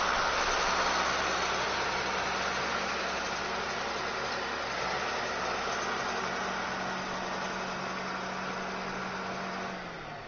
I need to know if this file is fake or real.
real